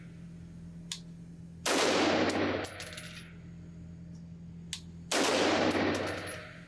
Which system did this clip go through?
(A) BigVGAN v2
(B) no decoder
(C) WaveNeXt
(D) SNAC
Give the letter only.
B